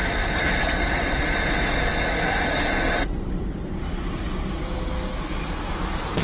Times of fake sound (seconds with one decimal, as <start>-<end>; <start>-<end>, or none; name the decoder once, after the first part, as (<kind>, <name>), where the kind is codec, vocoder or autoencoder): none